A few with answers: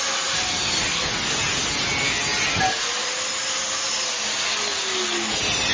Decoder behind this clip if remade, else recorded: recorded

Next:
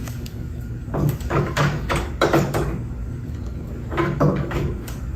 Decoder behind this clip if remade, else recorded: remade, codec, DAC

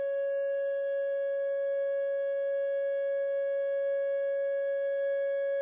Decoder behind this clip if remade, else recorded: remade, codec, DAC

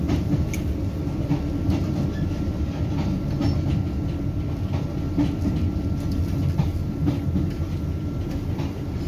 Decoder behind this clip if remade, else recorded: recorded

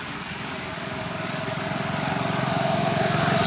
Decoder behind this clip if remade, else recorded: remade, codec, DAC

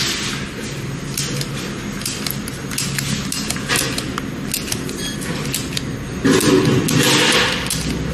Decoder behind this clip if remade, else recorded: recorded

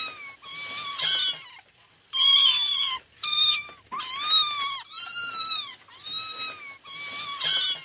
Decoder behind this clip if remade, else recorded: recorded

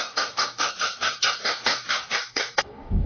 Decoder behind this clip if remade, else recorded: remade, codec, DAC